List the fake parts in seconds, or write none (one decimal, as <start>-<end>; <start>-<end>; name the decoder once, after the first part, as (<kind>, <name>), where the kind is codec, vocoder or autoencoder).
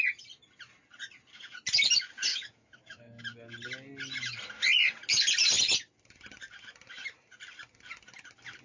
2.3-3.2 (autoencoder, DAC-VAE)